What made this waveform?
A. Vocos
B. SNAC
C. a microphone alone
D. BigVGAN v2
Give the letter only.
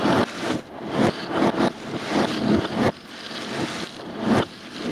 C